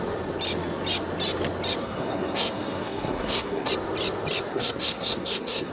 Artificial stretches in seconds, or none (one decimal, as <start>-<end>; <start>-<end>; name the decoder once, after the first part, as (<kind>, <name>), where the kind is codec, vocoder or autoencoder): 1.8-3.7 (codec, SNAC); 4.5-5.7